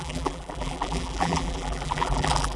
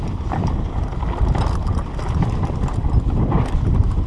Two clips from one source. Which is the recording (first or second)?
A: second